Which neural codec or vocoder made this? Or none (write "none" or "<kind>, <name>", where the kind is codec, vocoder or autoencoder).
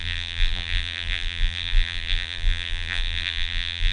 vocoder, BigVGAN v2